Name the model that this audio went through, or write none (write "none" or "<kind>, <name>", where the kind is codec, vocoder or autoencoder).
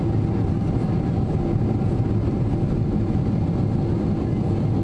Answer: none